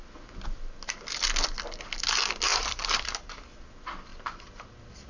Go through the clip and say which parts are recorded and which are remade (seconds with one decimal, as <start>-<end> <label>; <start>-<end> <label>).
0.0-2.5 recorded; 2.5-3.4 remade; 3.4-4.1 recorded; 4.1-4.6 remade; 4.6-5.1 recorded